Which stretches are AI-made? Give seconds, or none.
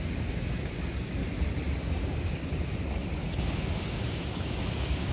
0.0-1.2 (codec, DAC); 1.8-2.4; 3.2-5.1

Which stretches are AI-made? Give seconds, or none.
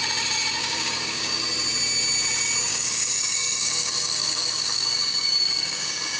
0.6-1.4 (codec, DAC); 2.7-6.2